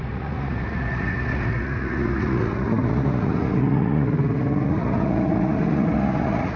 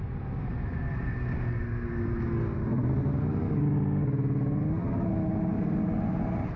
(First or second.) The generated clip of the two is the first